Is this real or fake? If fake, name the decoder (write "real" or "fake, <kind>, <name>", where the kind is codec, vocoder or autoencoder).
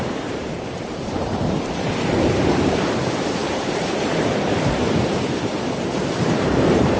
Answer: fake, vocoder, BigVGAN v2